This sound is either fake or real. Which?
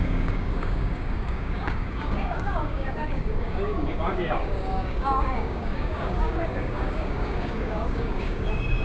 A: fake